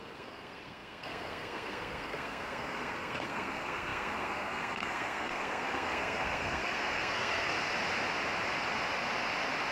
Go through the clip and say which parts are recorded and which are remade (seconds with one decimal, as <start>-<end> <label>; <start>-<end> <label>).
0.0-7.5 remade; 7.5-9.7 recorded